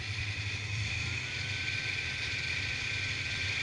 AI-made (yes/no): yes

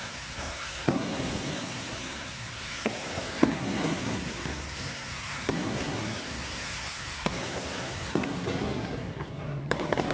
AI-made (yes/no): yes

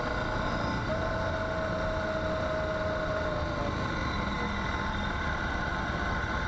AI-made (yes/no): no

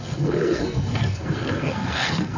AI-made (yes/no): yes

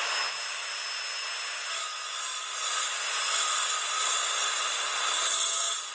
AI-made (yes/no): no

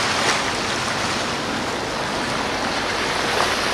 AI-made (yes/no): no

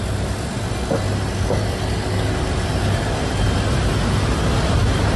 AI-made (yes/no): no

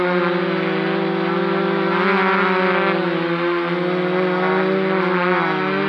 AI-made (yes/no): no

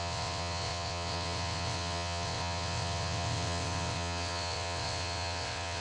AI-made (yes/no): yes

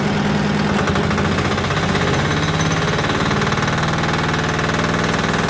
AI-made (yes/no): no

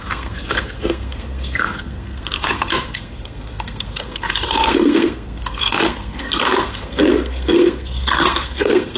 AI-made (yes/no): yes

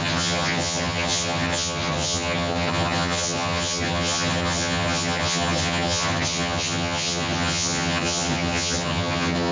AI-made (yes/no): yes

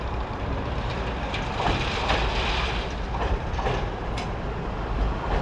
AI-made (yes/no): yes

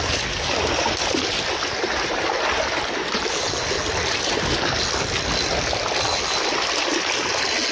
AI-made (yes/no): no